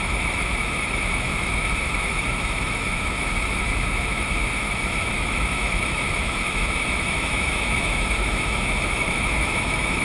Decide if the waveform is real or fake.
fake